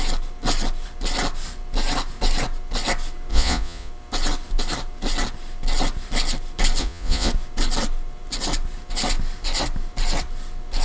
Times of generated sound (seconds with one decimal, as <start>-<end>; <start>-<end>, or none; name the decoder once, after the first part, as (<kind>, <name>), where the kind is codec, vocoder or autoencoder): 3.3-3.9 (vocoder, Vocos); 6.8-7.3